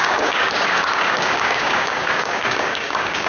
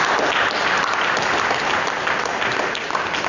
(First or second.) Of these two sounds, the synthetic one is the first